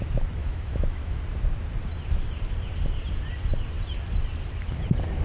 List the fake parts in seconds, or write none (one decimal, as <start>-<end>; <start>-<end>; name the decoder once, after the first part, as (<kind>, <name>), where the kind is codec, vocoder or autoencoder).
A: 0.4-1.2 (autoencoder, DAC-VAE)